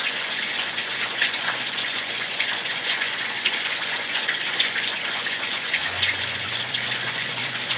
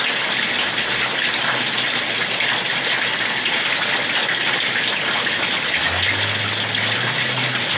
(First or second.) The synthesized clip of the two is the first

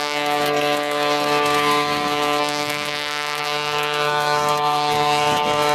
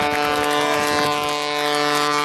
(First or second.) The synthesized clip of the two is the first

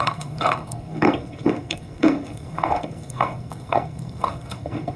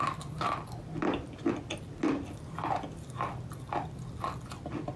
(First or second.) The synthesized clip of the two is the first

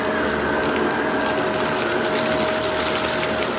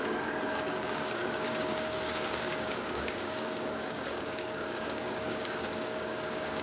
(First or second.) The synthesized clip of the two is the second